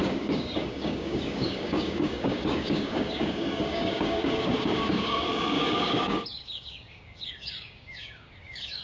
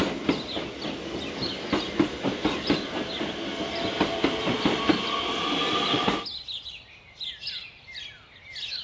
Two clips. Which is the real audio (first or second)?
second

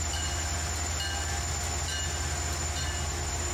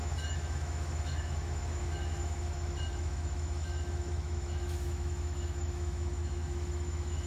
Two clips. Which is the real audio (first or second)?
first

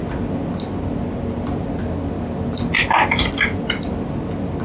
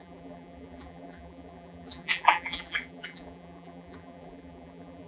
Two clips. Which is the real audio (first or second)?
first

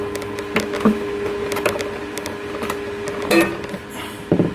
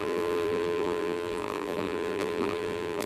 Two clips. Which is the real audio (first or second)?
first